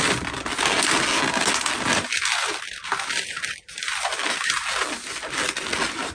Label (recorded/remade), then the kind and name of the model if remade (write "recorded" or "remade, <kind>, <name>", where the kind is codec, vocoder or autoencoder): recorded